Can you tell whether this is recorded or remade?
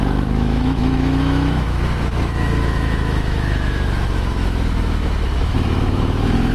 remade